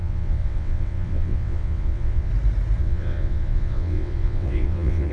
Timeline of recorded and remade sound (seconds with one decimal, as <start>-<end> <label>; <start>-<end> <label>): 0.0-2.3 remade; 2.3-2.8 recorded; 2.8-5.1 remade